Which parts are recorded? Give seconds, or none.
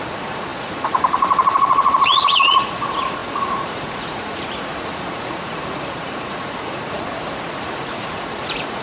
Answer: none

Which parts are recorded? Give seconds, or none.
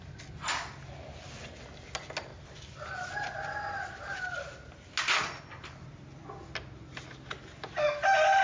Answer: 0.0-8.4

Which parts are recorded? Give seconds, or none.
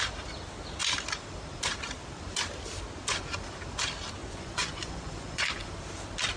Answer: 0.0-4.2; 5.7-6.4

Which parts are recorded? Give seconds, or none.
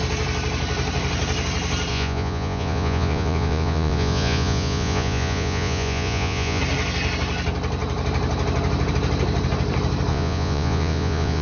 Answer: 0.0-1.9; 6.6-10.1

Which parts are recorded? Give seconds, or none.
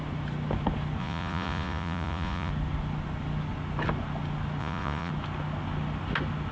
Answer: 0.0-1.0; 2.5-4.6; 5.1-6.5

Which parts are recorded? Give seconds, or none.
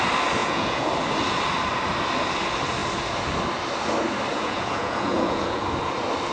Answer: 0.0-0.4; 0.9-4.3; 5.6-6.3